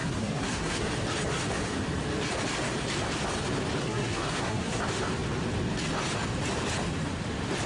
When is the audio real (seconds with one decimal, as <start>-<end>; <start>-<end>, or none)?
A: 0.9-3.8; 4.8-7.7